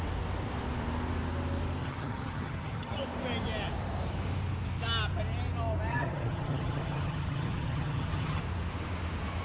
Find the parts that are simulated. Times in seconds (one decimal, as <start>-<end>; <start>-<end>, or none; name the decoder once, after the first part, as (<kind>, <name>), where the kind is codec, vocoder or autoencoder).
1.8-3.0 (vocoder, HiFi-GAN); 5.9-8.4